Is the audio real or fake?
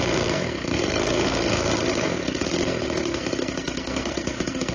fake